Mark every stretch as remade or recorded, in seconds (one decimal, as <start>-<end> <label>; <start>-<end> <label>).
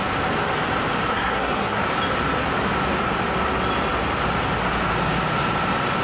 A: 0.0-1.1 recorded; 1.1-1.8 remade; 1.8-6.0 recorded